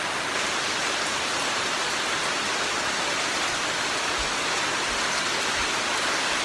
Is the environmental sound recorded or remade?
recorded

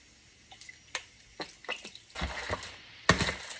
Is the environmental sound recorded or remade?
recorded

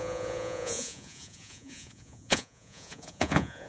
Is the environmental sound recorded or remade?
remade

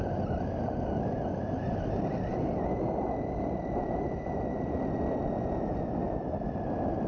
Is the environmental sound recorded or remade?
recorded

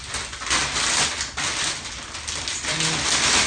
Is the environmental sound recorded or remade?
recorded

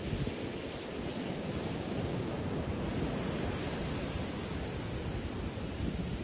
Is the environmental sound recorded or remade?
recorded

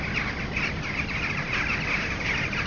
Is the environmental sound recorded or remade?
recorded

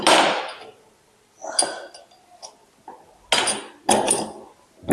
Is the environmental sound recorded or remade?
recorded